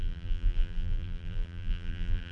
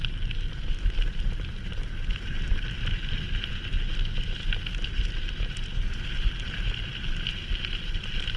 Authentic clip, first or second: second